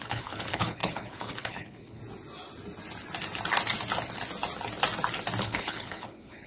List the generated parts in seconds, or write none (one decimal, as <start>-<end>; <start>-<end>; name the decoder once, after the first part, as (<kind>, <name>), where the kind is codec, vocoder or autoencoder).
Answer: 0.0-2.0 (codec, HILCodec); 5.4-6.5